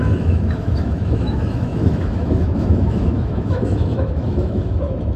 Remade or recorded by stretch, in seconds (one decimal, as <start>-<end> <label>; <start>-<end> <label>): 0.0-5.2 remade